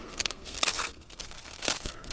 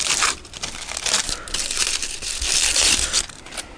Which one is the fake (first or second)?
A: first